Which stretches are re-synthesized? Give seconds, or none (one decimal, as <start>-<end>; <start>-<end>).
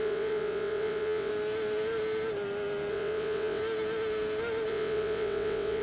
0.0-1.3; 2.9-3.6; 4.7-5.8